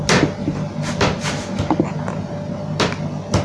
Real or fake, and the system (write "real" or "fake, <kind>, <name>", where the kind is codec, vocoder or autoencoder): real